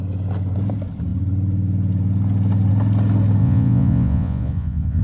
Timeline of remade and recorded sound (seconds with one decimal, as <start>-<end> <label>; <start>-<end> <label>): 0.0-3.4 recorded; 3.4-5.0 remade